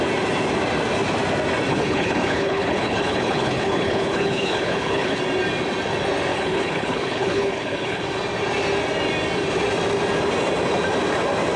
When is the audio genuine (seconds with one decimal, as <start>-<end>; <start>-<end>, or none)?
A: 0.0-1.7; 5.2-6.3; 8.0-11.6